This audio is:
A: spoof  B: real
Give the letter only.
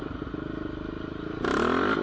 B